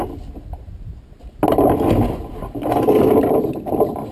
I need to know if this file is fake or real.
real